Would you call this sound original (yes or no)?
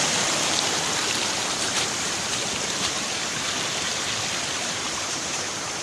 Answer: no